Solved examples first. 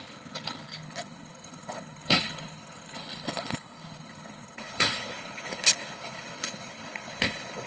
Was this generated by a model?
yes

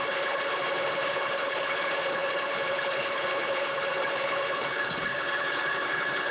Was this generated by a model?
yes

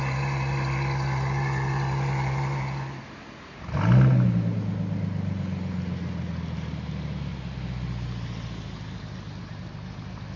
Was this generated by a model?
no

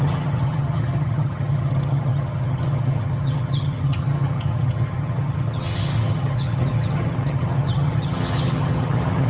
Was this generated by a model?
yes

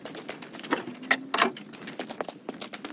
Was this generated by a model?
no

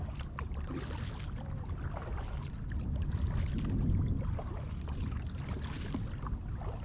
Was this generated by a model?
no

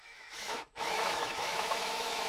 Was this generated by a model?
yes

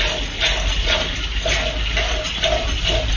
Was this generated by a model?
no